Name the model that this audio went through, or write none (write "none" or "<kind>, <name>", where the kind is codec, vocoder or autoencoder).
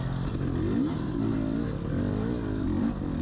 none